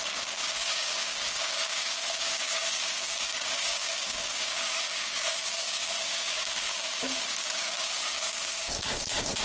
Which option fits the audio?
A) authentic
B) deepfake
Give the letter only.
B